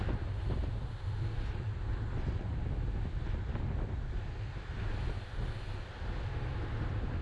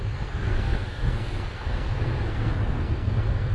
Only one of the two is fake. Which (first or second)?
second